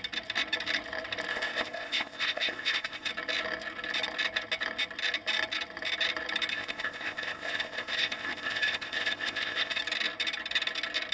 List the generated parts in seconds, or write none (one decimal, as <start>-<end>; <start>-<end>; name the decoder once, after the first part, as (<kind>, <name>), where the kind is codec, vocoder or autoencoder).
1.3-3.1 (codec, ZipCodec); 6.5-9.8